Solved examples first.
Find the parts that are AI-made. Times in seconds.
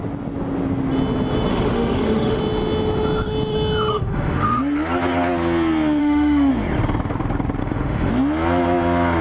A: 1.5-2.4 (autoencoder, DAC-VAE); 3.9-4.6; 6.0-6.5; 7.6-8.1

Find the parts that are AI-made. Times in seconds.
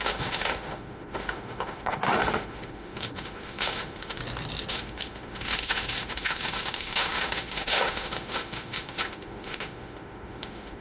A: 0.0-4.2 (autoencoder, DAC-VAE); 4.7-10.8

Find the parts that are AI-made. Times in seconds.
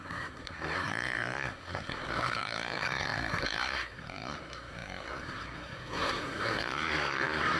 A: 0.0-7.6 (codec, SNAC)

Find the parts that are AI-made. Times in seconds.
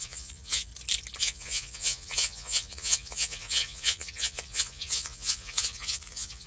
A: 0.0-0.7 (vocoder, Vocos); 1.2-6.5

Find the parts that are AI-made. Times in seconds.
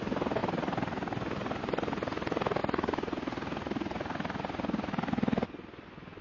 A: none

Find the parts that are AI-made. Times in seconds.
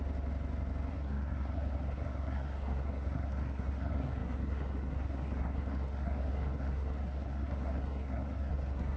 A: 0.9-9.0 (codec, SNAC)